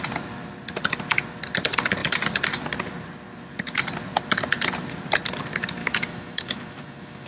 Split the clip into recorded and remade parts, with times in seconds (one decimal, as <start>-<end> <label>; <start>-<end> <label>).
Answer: 0.0-5.8 recorded; 5.8-7.3 remade